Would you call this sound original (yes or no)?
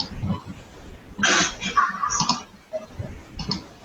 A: yes